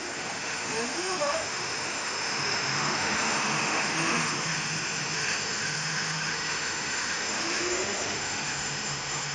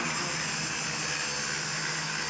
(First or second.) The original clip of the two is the second